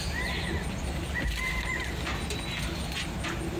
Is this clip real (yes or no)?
yes